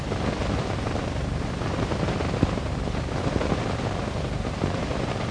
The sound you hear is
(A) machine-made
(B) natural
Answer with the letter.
A